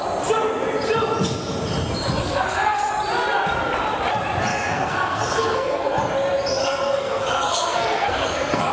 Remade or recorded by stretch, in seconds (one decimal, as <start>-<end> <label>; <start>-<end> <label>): 0.0-2.2 recorded; 2.2-2.9 remade; 2.9-4.5 recorded; 4.5-6.0 remade; 6.0-6.6 recorded; 6.6-8.7 remade

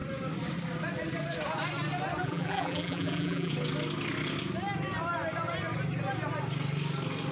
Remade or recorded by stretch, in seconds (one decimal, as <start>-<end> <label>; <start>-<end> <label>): 0.0-2.2 recorded; 2.2-3.5 remade; 3.5-7.3 recorded

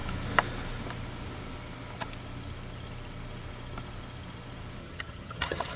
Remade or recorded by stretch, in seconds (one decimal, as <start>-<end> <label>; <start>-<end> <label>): 0.0-4.8 recorded; 4.8-5.8 remade